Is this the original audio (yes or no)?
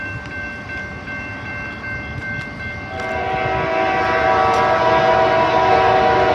yes